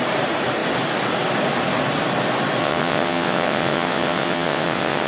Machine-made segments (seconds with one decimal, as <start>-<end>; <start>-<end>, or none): 2.6-5.1